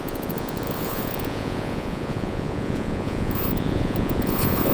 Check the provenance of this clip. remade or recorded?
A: remade